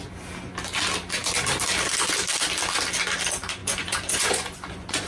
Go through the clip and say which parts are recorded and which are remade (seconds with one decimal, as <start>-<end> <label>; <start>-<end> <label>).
0.0-3.6 recorded; 3.6-5.1 remade